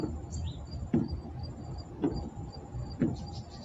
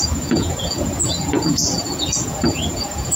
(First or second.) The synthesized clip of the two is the second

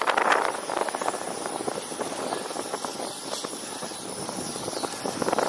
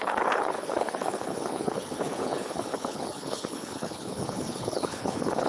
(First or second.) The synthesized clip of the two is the second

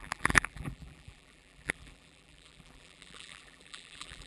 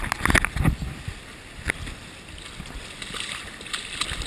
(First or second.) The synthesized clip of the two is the first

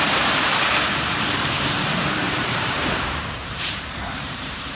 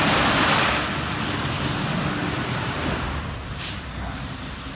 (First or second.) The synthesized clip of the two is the first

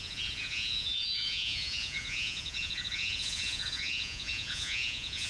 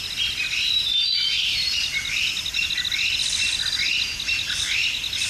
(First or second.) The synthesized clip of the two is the first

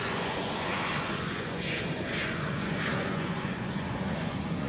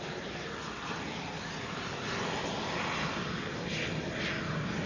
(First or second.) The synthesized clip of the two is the first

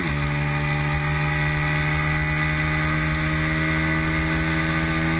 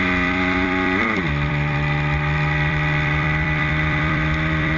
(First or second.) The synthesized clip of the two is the second